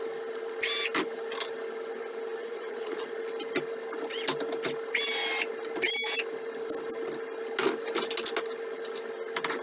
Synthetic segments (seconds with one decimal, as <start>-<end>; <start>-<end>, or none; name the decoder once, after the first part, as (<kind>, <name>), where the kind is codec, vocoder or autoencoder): 2.4-3.1 (vocoder, Vocos)